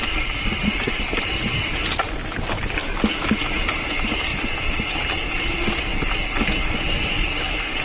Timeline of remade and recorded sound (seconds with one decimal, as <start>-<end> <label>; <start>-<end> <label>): 0.0-1.5 remade; 1.5-4.3 recorded; 4.3-5.4 remade; 5.4-7.8 recorded